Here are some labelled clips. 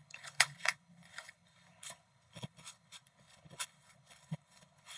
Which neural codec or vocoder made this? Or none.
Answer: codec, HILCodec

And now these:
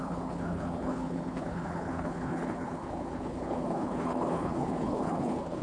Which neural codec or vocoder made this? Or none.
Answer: codec, HILCodec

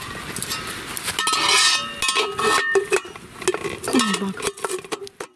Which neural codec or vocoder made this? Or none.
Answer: none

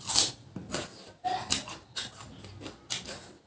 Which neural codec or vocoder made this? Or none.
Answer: none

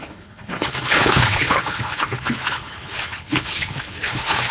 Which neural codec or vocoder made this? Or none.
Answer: codec, HILCodec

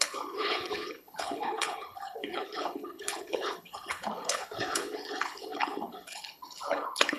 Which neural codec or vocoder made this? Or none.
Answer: codec, HILCodec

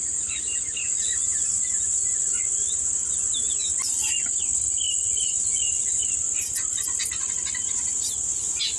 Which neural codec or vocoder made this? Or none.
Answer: none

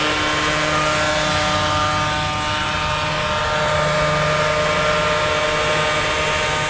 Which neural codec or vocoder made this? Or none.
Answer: none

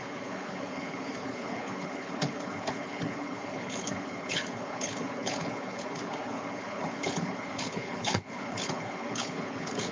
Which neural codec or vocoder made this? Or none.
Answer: codec, HILCodec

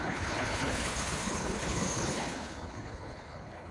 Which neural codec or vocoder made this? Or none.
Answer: codec, HILCodec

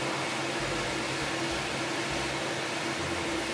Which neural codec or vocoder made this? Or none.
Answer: none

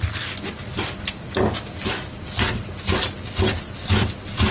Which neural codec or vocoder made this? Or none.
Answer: none